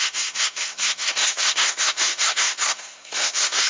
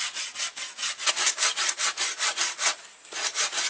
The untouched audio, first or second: second